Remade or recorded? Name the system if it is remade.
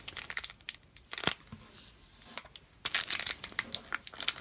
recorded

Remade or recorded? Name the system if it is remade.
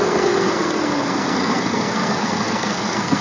remade, codec, SNAC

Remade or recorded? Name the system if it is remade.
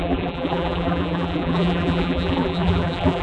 remade, vocoder, BigVGAN v2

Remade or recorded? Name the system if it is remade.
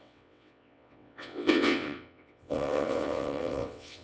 remade, vocoder, WaveNeXt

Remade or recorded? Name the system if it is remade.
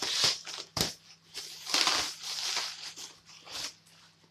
recorded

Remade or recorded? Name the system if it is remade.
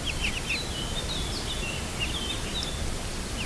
recorded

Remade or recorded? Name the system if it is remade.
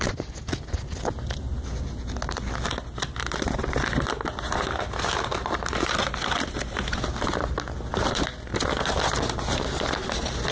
recorded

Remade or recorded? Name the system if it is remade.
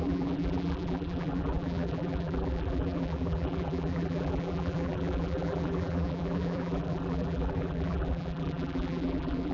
remade, vocoder, BigVGAN v2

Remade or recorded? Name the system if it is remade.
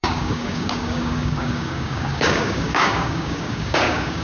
remade, codec, DAC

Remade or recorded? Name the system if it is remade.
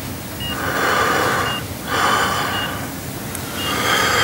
recorded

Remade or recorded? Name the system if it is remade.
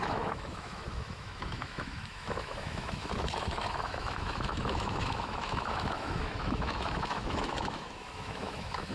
remade, autoencoder, DAC-VAE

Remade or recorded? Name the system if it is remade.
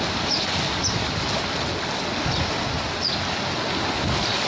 recorded